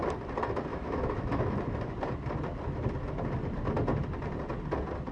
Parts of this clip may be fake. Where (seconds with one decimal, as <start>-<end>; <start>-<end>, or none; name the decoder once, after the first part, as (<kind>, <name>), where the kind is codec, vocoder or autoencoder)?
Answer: 0.7-1.4 (autoencoder, DAC-VAE)